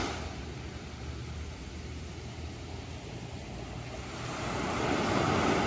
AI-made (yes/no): no